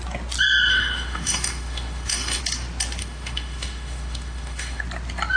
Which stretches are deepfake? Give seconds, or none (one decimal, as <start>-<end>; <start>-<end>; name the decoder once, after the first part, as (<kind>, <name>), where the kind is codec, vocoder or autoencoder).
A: 0.7-2.4 (autoencoder, DAC-VAE); 3.0-4.8